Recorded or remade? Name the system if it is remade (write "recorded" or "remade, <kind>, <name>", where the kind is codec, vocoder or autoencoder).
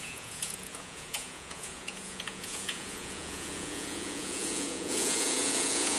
remade, vocoder, Vocos